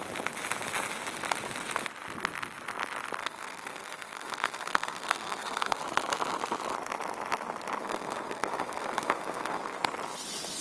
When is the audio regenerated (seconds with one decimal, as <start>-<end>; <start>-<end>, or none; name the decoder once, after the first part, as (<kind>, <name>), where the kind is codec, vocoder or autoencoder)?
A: 3.2-5.8 (codec, SNAC); 7.8-9.8